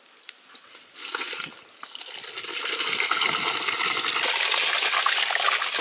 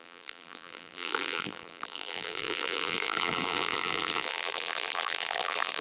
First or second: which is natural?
first